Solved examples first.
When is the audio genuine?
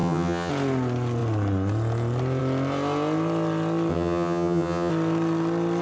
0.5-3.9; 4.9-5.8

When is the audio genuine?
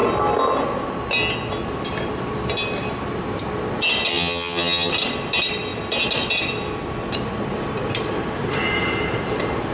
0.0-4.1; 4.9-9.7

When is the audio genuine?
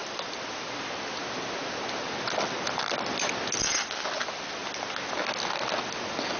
0.0-6.4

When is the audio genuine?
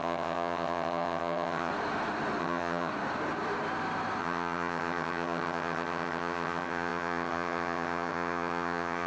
1.7-2.4; 2.9-4.2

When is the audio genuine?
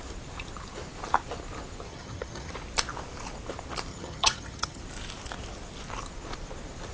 0.0-1.9; 2.5-3.9; 4.8-6.9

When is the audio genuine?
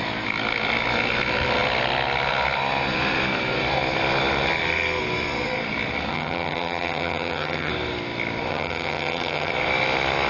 0.0-6.1; 7.7-8.5; 9.5-10.3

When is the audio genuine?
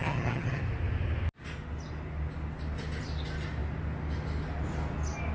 0.6-5.3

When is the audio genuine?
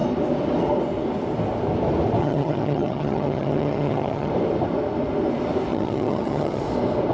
0.0-2.2; 4.3-5.7; 6.6-7.1